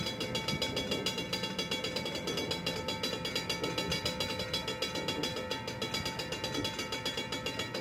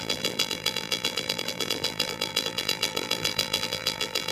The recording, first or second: first